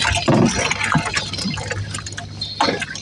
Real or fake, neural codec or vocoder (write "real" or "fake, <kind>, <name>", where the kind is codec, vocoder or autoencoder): real